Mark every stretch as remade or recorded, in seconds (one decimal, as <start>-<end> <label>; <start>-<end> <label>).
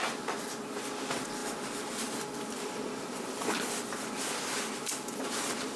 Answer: 0.0-5.8 recorded